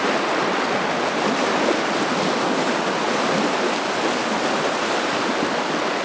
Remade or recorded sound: recorded